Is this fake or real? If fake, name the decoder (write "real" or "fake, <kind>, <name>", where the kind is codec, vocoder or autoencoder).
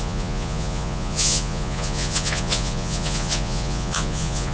fake, vocoder, Vocos